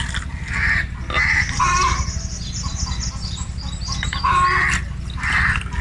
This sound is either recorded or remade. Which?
recorded